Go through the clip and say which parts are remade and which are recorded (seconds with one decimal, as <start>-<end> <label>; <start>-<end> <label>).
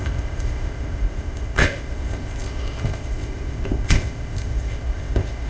0.0-5.5 remade